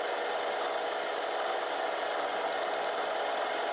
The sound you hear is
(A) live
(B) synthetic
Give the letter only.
A